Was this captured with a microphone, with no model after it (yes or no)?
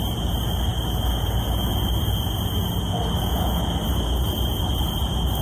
yes